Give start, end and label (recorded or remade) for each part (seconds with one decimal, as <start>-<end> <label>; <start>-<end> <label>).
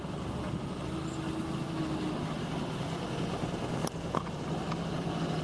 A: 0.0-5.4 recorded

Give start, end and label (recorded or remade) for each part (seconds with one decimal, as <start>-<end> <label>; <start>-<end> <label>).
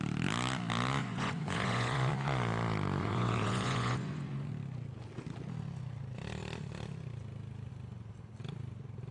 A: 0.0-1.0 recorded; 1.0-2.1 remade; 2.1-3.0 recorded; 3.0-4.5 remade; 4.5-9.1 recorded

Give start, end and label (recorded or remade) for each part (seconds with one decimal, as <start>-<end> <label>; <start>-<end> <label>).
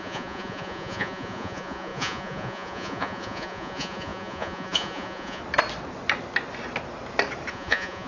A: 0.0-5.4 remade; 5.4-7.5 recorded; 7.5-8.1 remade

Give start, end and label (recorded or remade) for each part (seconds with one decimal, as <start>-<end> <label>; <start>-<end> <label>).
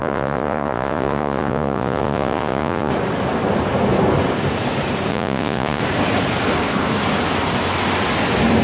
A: 0.0-2.9 remade; 2.9-5.1 recorded; 5.1-5.8 remade; 5.8-8.6 recorded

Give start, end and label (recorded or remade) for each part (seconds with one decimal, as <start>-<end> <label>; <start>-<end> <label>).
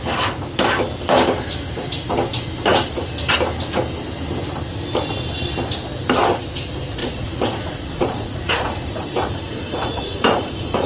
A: 0.0-7.0 recorded; 7.0-10.9 remade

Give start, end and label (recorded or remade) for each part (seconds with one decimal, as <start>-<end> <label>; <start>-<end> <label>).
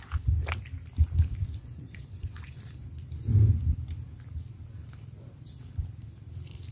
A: 0.0-1.4 recorded; 1.4-2.6 remade; 2.6-6.7 recorded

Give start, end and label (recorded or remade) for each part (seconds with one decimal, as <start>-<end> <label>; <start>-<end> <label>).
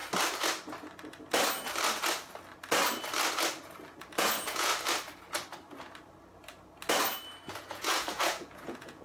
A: 0.0-4.2 recorded; 4.2-4.7 remade; 4.7-7.5 recorded; 7.5-9.0 remade